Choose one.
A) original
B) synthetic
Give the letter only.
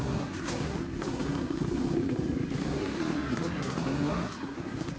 B